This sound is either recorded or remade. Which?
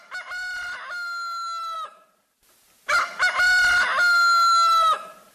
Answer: recorded